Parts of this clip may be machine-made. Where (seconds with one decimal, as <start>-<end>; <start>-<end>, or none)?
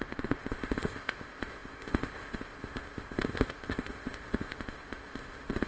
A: 0.0-5.7